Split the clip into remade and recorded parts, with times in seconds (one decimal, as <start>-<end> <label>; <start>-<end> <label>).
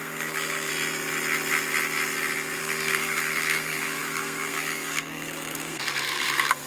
0.0-0.7 remade; 0.7-2.6 recorded; 2.6-6.7 remade